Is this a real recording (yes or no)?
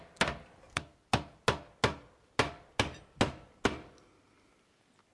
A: yes